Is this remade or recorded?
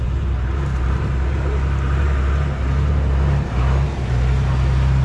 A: recorded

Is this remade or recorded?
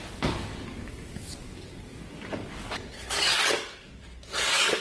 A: remade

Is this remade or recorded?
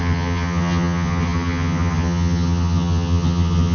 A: remade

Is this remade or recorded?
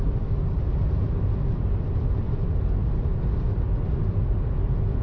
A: recorded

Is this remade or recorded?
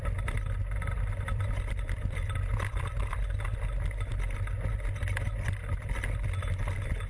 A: recorded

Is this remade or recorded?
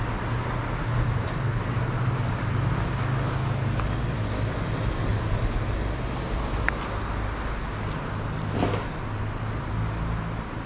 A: recorded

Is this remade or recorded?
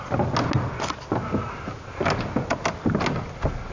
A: recorded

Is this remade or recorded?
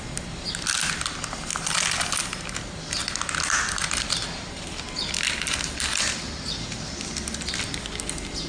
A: recorded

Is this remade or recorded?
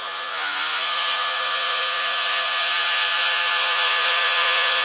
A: remade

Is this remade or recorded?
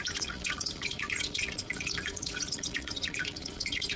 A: remade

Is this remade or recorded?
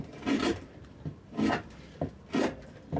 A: recorded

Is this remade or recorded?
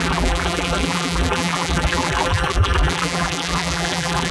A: remade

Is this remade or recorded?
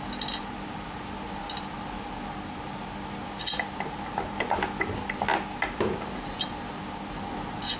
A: recorded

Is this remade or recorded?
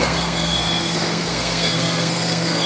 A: remade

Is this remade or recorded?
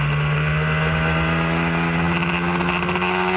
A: recorded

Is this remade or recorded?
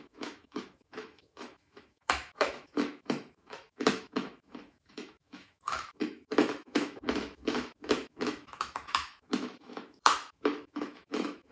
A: remade